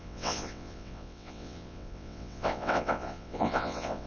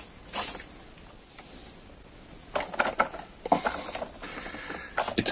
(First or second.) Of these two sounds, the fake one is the first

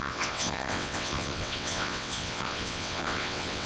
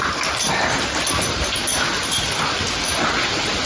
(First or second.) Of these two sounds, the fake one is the first